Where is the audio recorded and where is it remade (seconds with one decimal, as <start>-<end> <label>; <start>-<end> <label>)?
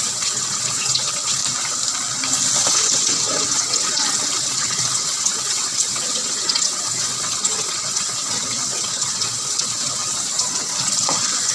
0.0-1.4 remade; 1.4-2.7 recorded; 2.7-11.5 remade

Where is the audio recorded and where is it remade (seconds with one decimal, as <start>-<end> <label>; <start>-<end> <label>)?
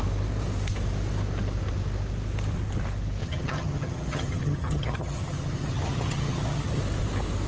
0.0-3.2 recorded; 3.2-6.8 remade; 6.8-7.5 recorded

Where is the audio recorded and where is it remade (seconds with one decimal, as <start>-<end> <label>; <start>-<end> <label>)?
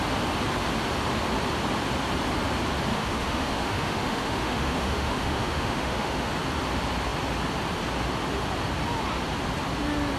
0.0-2.9 recorded; 2.9-6.3 remade; 6.3-10.2 recorded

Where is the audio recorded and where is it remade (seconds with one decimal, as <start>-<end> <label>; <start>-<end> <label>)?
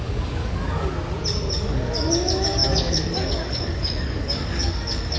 0.0-0.9 remade; 0.9-1.6 recorded; 1.6-5.2 remade